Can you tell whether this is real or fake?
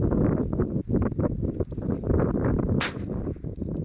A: real